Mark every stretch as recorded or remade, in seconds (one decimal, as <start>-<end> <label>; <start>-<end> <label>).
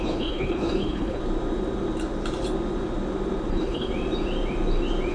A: 0.0-1.2 remade; 1.2-3.5 recorded; 3.5-3.9 remade; 3.9-5.1 recorded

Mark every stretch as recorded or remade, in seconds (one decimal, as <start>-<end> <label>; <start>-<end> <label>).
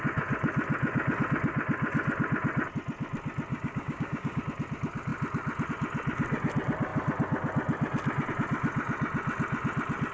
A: 0.0-3.5 recorded; 3.5-4.4 remade; 4.4-10.1 recorded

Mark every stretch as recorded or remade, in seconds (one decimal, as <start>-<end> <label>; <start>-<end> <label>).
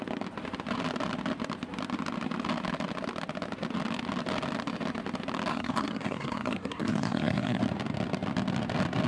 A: 0.0-5.5 recorded; 5.5-7.6 remade; 7.6-9.1 recorded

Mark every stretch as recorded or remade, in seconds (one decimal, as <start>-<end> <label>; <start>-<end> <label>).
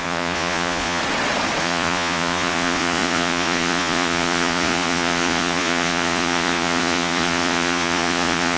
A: 0.0-1.0 remade; 1.0-1.6 recorded; 1.6-8.6 remade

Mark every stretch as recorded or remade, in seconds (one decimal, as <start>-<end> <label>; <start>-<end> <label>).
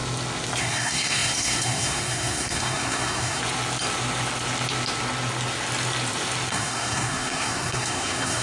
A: 0.0-0.6 recorded; 0.6-3.4 remade; 3.4-6.5 recorded; 6.5-8.4 remade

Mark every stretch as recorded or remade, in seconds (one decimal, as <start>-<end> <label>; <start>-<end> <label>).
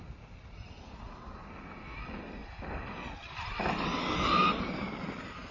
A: 0.0-5.5 recorded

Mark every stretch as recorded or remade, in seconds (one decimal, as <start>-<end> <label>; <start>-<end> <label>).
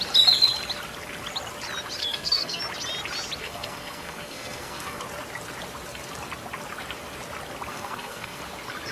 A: 0.0-2.0 recorded; 2.0-2.6 remade; 2.6-3.4 recorded; 3.4-5.0 remade; 5.0-7.7 recorded; 7.7-8.4 remade; 8.4-8.9 recorded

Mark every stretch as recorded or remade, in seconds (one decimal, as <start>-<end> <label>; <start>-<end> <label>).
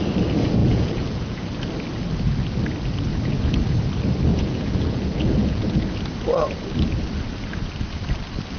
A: 0.0-0.6 recorded; 0.6-1.4 remade; 1.4-4.3 recorded; 4.3-5.8 remade; 5.8-8.6 recorded